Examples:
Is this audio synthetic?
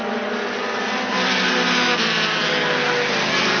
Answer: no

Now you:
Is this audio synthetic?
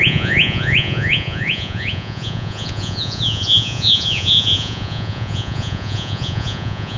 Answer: yes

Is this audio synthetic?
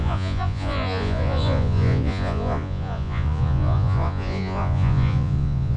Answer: yes